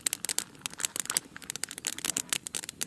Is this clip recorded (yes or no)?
yes